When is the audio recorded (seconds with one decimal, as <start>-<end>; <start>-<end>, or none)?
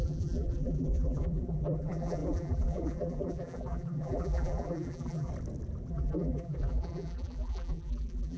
5.3-5.9